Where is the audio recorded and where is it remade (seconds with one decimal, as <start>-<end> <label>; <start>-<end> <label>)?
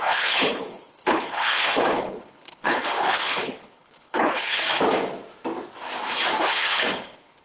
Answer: 0.0-4.6 remade; 4.6-6.4 recorded; 6.4-7.4 remade